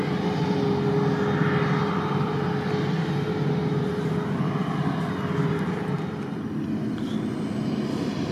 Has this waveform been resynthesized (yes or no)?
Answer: no